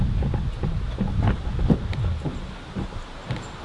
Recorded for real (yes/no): yes